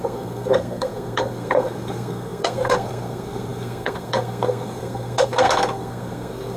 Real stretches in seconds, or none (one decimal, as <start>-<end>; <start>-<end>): none